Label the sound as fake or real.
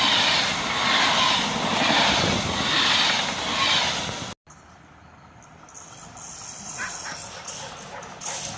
real